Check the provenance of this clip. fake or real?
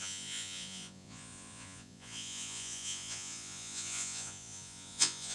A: fake